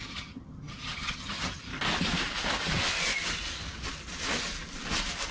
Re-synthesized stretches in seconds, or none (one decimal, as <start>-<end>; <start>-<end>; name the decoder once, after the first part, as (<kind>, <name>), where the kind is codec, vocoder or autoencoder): 0.0-1.7 (vocoder, HiFi-GAN)